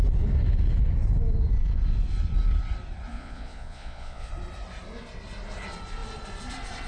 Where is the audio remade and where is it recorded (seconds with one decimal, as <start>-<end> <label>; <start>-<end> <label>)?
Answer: 0.0-3.1 recorded; 3.1-4.3 remade; 4.3-6.9 recorded